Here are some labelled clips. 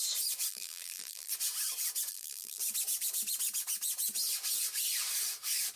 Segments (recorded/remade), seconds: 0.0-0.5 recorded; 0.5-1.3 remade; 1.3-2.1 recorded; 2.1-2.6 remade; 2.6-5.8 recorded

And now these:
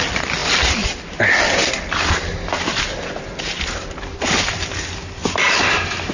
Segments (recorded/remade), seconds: 0.0-1.6 recorded; 1.6-2.1 remade; 2.1-5.2 recorded; 5.2-6.1 remade

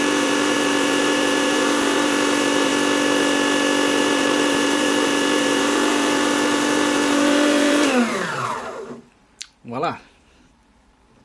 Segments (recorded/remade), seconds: 0.0-2.7 remade; 2.7-4.0 recorded; 4.0-11.2 remade

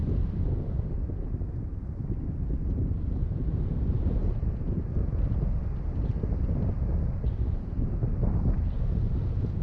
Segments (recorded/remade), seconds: 0.0-2.1 remade; 2.1-9.6 recorded

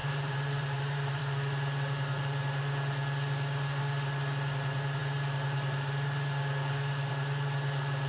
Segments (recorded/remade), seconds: 0.0-1.2 remade; 1.2-8.1 recorded

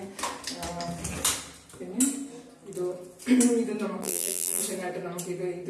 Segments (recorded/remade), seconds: 0.0-4.0 recorded; 4.0-4.6 remade; 4.6-5.7 recorded